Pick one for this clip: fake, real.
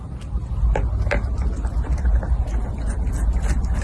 real